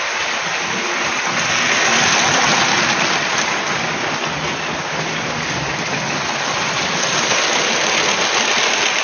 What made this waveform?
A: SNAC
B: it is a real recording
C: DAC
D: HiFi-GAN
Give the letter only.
B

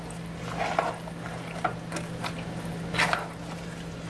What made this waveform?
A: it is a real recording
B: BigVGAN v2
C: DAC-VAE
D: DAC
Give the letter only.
A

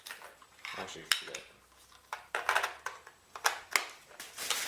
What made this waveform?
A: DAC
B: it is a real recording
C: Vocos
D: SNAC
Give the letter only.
B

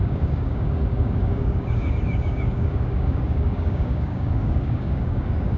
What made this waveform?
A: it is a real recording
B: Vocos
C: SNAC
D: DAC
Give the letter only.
D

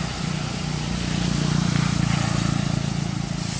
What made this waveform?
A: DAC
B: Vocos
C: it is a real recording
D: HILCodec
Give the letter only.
C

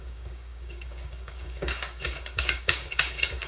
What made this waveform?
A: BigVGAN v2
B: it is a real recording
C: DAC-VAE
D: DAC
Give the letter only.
D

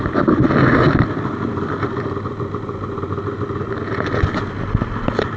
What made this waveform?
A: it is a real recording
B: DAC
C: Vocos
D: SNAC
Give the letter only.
A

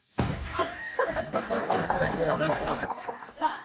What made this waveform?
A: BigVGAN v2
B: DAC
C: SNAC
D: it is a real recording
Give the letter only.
B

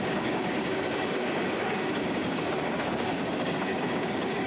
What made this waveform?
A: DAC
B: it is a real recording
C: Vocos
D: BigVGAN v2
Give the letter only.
A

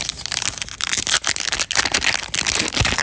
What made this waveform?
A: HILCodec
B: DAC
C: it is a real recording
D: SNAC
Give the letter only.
C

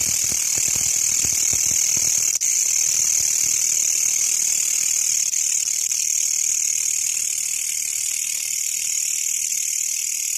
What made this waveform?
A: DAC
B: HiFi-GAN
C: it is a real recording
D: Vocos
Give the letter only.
C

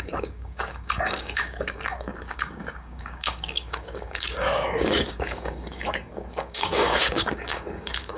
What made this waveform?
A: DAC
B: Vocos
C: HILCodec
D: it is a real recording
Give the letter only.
A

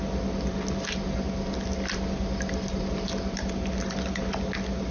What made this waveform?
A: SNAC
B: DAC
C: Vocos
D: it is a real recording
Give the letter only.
D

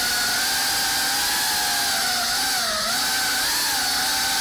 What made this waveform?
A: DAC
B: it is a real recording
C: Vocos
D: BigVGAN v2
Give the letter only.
B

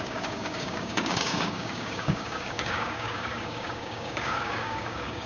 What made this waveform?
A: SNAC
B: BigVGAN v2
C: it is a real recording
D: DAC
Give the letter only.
D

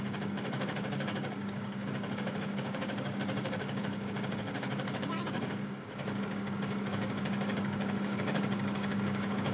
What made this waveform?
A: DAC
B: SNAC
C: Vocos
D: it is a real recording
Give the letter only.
A